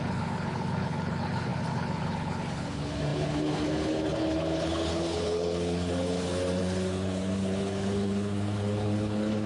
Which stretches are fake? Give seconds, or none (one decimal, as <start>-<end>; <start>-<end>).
0.0-9.5